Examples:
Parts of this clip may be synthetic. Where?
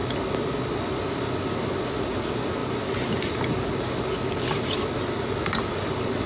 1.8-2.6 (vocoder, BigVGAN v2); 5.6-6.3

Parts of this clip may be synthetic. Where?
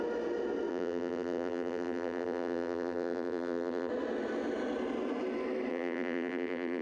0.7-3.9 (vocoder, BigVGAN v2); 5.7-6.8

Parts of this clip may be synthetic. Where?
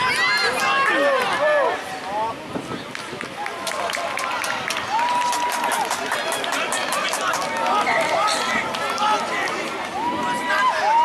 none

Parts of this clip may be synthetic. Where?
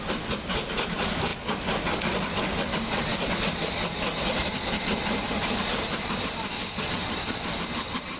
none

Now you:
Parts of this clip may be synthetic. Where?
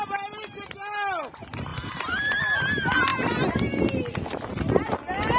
1.7-2.4 (vocoder, BigVGAN v2)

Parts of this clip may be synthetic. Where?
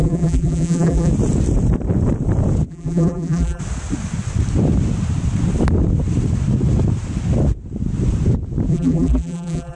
0.0-1.1 (vocoder, BigVGAN v2); 2.7-3.6; 8.7-9.8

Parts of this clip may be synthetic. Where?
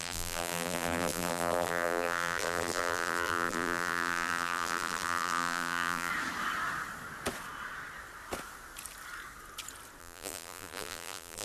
0.0-6.1 (vocoder, BigVGAN v2); 10.0-11.4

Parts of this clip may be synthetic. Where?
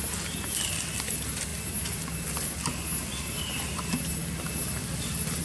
4.8-5.4 (vocoder, BigVGAN v2)